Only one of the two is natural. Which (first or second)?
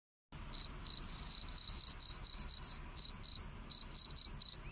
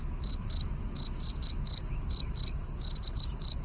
first